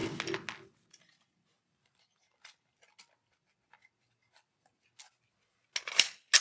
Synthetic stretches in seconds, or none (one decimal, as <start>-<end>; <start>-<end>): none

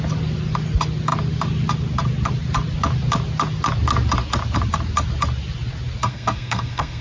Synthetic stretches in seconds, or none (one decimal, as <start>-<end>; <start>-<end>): 6.0-7.0

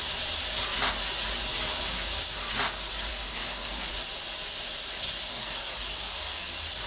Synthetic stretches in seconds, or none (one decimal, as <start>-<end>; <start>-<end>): 3.1-3.9; 5.3-6.5

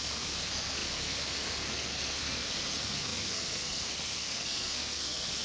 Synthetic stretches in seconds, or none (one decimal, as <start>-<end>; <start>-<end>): 0.0-5.4

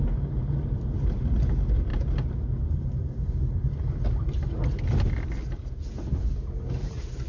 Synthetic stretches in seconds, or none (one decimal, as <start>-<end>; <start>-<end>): none

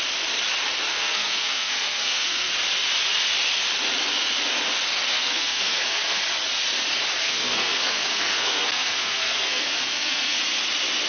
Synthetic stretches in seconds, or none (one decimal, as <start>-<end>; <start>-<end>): 0.9-2.5; 5.1-6.2; 7.2-10.4

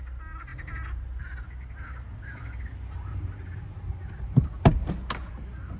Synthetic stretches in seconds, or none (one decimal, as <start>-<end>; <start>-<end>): none

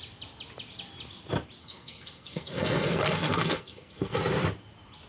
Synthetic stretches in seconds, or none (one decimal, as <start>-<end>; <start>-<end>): 1.6-4.2